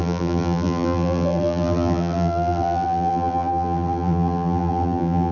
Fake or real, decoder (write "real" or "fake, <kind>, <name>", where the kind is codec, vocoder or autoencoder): fake, vocoder, BigVGAN v2